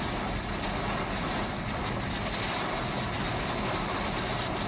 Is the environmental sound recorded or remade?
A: recorded